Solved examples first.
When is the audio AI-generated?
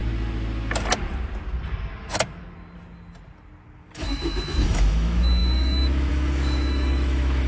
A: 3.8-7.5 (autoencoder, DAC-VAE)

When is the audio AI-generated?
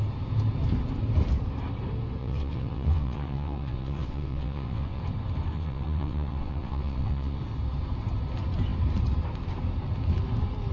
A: 2.2-5.0 (vocoder, WaveNeXt); 5.5-7.4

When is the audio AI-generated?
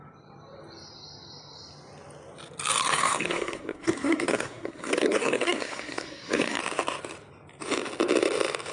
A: 3.0-6.6 (codec, SNAC)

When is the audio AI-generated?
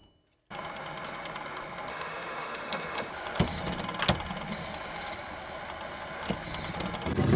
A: 1.9-3.1 (autoencoder, DAC-VAE)